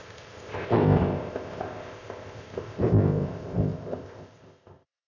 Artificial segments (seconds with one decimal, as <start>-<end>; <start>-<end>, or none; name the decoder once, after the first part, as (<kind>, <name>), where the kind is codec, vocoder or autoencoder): 0.0-5.1 (codec, ZipCodec)